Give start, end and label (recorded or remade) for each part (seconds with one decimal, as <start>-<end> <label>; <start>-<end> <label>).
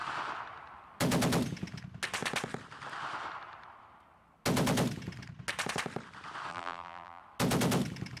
0.0-6.5 recorded; 6.5-7.2 remade; 7.2-8.2 recorded